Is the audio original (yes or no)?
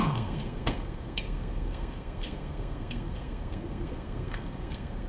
no